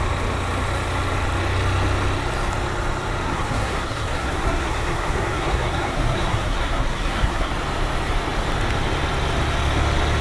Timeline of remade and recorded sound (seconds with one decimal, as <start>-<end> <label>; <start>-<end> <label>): 0.0-3.2 recorded; 3.2-7.5 remade; 7.5-10.2 recorded